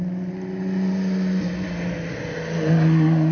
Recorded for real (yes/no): yes